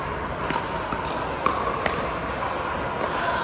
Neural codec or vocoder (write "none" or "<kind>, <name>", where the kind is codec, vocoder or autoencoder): none